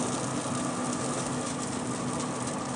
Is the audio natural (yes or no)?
yes